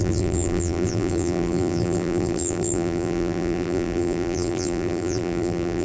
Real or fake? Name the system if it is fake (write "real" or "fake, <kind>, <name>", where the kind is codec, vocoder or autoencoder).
fake, vocoder, BigVGAN v2